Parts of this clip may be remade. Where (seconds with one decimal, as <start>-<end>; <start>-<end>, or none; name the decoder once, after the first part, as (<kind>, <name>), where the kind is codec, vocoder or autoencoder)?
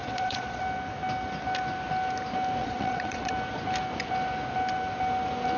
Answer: 0.0-0.6 (vocoder, Vocos); 2.6-3.3